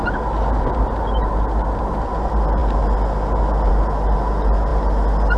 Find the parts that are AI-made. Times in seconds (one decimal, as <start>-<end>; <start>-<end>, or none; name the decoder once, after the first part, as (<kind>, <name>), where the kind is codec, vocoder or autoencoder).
none